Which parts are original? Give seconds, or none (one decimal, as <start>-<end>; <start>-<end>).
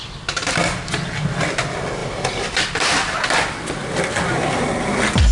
0.0-2.0; 3.3-5.3